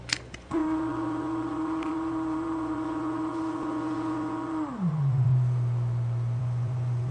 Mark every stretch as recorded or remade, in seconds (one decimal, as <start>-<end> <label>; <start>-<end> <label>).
0.0-5.3 remade; 5.3-6.4 recorded; 6.4-7.1 remade